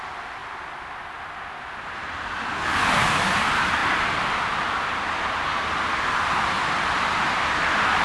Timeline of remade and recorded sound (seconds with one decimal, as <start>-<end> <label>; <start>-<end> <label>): 0.0-8.0 recorded